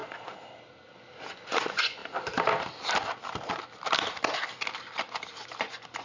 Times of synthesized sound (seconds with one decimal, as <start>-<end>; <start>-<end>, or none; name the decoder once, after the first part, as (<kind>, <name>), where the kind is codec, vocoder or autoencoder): 1.3-2.0 (vocoder, Vocos); 5.6-6.0